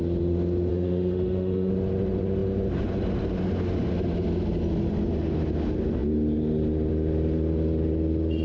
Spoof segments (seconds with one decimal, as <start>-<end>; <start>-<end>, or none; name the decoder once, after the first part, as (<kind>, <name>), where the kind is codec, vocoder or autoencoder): 0.7-1.7 (autoencoder, DAC-VAE)